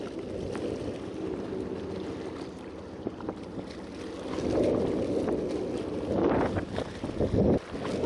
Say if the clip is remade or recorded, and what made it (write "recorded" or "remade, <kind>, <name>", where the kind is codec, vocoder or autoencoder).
recorded